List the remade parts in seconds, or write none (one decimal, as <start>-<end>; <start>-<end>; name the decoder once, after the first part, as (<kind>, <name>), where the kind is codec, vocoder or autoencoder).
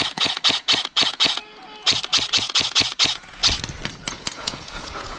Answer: 0.0-1.4 (vocoder, Vocos); 2.3-3.4; 4.1-5.2